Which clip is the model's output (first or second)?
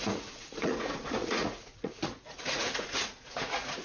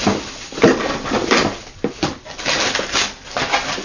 first